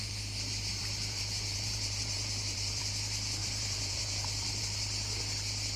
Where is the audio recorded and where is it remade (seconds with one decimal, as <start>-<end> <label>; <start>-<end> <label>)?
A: 0.0-0.7 recorded; 0.7-2.9 remade; 2.9-3.4 recorded; 3.4-4.6 remade; 4.6-5.8 recorded